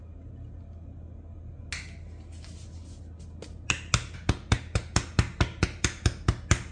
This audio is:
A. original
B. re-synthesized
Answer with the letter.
A